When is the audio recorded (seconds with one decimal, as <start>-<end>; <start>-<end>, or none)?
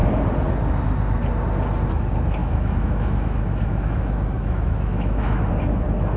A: 0.0-2.4; 5.5-6.2